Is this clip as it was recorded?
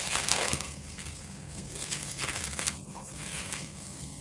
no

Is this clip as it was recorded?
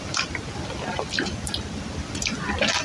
yes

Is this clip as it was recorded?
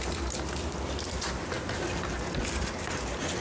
yes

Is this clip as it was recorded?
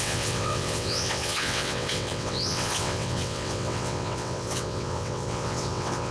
no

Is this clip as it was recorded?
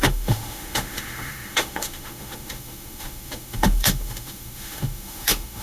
no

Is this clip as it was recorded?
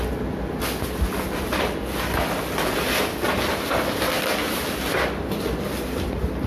yes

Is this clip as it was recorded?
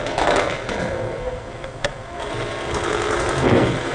no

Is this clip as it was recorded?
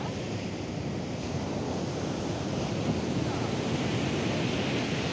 yes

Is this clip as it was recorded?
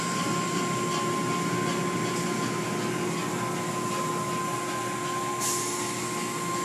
yes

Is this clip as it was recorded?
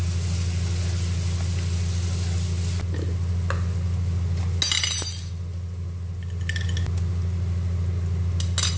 yes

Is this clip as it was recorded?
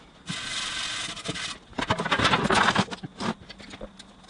yes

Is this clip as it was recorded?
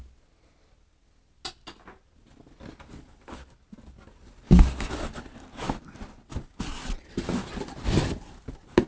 yes